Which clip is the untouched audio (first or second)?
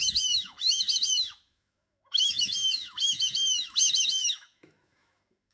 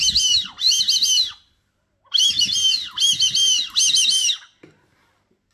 second